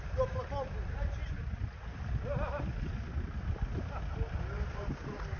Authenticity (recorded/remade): recorded